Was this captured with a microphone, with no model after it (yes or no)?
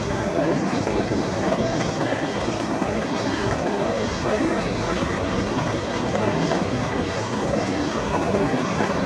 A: no